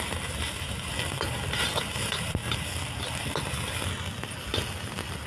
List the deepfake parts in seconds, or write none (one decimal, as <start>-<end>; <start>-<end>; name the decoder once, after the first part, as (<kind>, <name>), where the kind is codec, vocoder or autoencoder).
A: 0.0-0.9 (vocoder, BigVGAN v2); 1.5-2.4